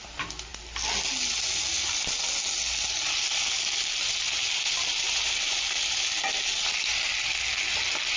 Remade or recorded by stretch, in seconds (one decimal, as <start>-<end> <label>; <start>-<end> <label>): 0.0-8.2 recorded